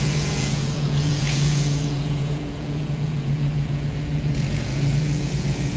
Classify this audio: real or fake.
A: fake